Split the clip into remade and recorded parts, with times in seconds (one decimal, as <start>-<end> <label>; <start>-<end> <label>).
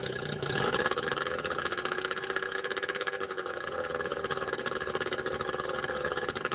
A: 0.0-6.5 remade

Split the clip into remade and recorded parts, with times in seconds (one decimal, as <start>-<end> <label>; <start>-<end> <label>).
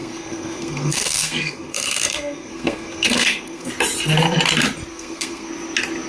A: 0.0-3.7 remade; 3.7-4.9 recorded; 4.9-5.5 remade; 5.5-6.1 recorded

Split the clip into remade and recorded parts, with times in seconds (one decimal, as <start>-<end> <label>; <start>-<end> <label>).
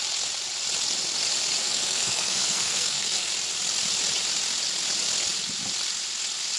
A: 0.0-1.6 recorded; 1.6-3.3 remade; 3.3-6.6 recorded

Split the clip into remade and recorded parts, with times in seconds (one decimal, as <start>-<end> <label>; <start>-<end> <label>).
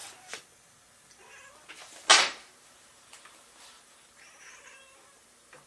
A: 0.0-2.1 recorded; 2.1-5.7 remade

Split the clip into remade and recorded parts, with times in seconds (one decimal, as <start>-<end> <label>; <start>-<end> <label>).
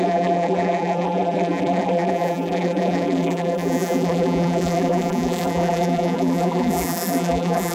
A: 0.0-7.7 remade